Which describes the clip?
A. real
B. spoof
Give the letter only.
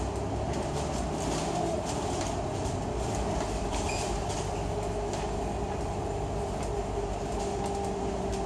A